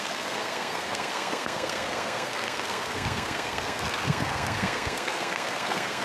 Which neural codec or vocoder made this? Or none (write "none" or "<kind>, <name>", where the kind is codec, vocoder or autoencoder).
codec, SNAC